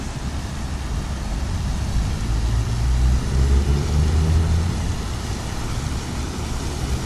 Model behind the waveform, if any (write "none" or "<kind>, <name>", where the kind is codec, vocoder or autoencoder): none